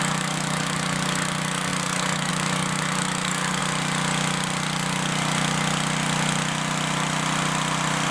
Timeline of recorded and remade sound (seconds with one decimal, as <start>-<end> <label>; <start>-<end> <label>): 0.0-3.6 remade; 3.6-8.1 recorded